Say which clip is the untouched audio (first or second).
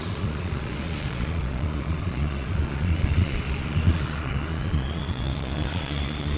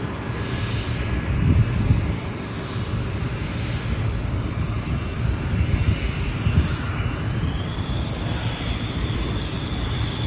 second